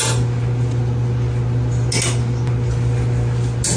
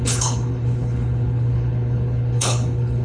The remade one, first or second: second